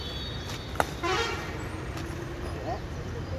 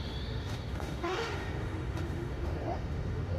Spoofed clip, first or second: second